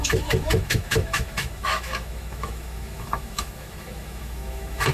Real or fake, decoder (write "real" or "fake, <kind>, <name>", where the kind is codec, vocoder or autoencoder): fake, autoencoder, DAC-VAE